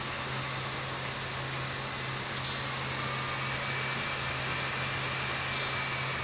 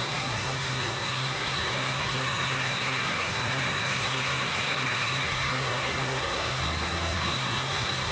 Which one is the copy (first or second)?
second